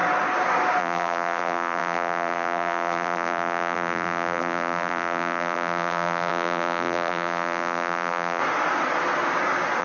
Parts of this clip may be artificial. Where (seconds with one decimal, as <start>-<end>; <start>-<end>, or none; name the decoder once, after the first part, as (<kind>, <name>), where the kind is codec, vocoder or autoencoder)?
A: 0.8-8.4 (vocoder, BigVGAN v2)